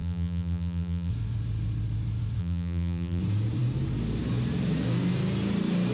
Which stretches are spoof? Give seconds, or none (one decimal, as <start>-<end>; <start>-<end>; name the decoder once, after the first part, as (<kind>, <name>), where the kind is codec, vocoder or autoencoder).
0.0-1.1 (vocoder, BigVGAN v2); 2.4-3.2